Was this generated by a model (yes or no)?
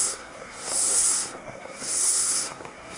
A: yes